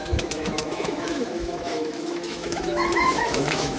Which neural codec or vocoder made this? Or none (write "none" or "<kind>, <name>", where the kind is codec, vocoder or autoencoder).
autoencoder, DAC-VAE